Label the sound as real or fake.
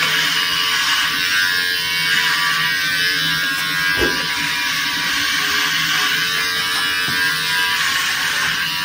real